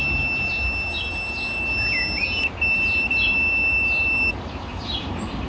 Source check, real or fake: fake